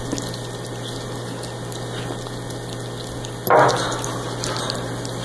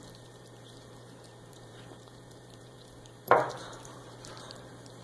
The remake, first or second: second